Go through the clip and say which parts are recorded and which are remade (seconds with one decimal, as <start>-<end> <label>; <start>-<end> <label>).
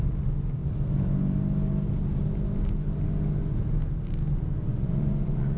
0.0-4.7 recorded; 4.7-5.6 remade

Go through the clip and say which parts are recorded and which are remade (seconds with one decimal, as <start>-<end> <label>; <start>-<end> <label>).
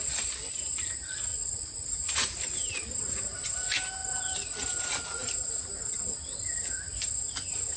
0.0-1.3 recorded; 1.3-2.4 remade; 2.4-7.8 recorded